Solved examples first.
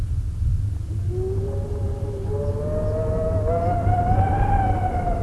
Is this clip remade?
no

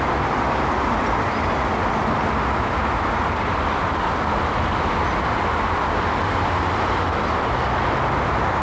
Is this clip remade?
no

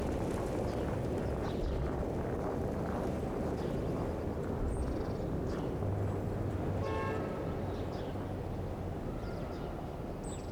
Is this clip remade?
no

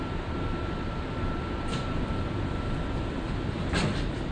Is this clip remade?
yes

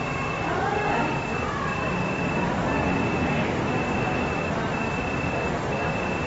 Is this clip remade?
no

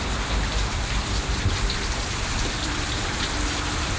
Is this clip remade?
yes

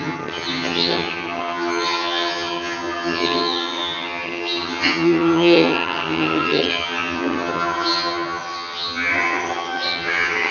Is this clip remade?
yes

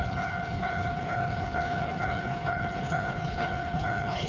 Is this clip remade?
yes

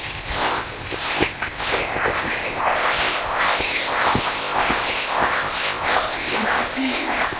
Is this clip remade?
yes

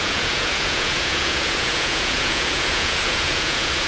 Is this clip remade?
yes